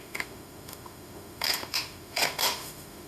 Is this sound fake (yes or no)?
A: yes